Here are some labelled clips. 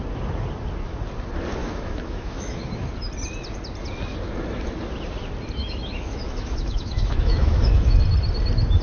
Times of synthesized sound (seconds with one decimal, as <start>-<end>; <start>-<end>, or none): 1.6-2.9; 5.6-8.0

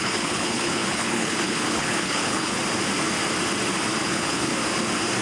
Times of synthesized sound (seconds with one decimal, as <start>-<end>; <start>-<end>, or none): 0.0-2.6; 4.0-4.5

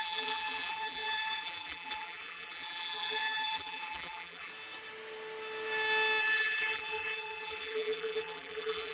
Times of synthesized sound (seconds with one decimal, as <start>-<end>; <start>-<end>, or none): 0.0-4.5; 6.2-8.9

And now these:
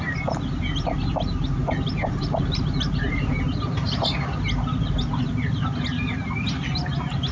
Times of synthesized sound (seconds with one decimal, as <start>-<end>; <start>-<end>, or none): 1.6-3.3

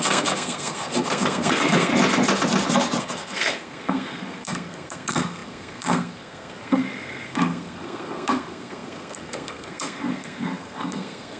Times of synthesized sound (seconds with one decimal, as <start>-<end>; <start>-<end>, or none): 0.0-1.9; 3.0-11.4

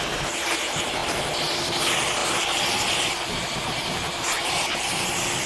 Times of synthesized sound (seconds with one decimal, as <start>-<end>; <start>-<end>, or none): 0.0-5.5

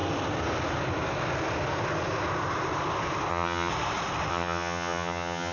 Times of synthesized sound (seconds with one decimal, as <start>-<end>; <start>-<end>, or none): 3.3-3.7; 4.3-5.5

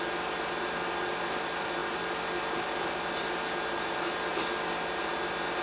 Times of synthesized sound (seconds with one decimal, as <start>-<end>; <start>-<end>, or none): none